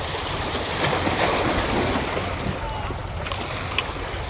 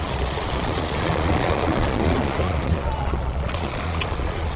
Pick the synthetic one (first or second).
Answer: second